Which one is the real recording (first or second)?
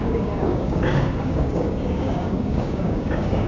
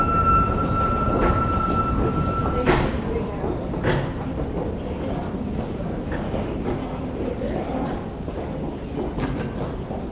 second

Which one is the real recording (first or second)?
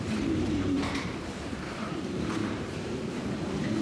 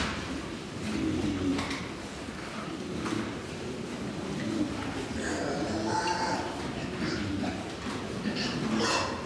second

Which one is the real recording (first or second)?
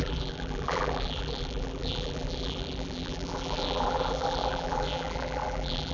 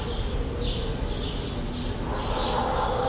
second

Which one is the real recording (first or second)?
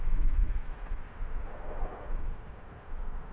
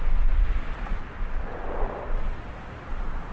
second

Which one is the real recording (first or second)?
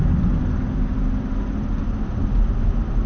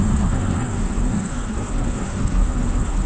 first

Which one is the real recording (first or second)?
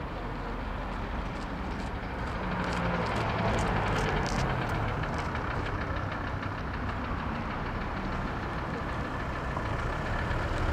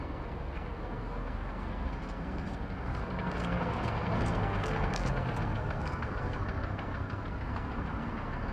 first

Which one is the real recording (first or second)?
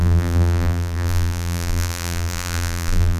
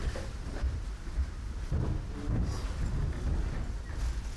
second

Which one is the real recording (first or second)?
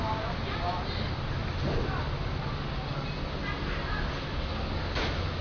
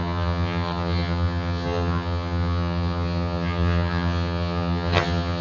first